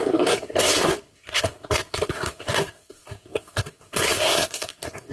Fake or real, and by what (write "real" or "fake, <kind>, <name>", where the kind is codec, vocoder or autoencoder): fake, codec, SNAC